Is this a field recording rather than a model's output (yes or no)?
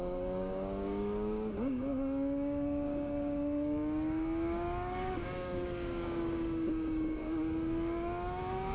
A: no